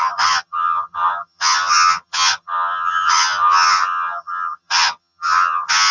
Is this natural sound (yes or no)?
no